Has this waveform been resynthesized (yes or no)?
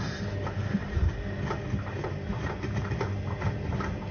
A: yes